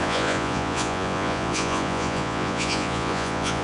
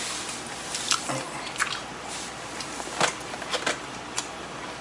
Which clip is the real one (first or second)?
second